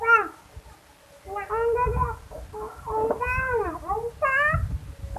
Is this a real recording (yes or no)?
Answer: yes